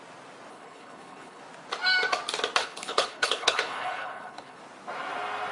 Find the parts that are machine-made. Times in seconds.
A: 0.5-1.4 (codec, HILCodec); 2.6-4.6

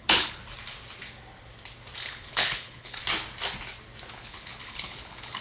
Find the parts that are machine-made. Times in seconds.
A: 0.0-0.4 (codec, HILCodec); 2.1-3.0; 4.1-5.4

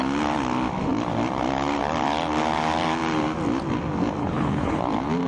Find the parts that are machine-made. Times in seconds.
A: 4.2-4.8 (codec, HILCodec)

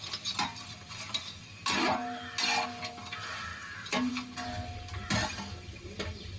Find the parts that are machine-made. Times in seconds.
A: none

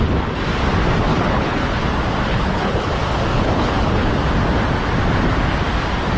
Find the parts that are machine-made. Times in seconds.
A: 1.1-1.8 (codec, HILCodec); 2.3-2.9; 3.3-4.1

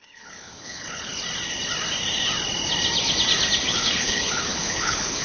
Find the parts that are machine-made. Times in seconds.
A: 0.0-1.1 (codec, HILCodec); 3.7-5.2

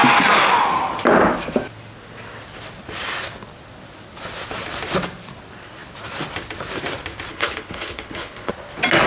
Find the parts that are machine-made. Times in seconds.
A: 7.3-8.5 (codec, HILCodec)